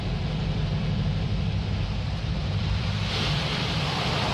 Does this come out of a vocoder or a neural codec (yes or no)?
yes